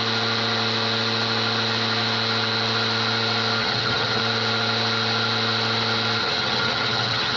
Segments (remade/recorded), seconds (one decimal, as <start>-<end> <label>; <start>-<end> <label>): 0.0-3.6 recorded; 3.6-4.2 remade; 4.2-6.2 recorded; 6.2-7.4 remade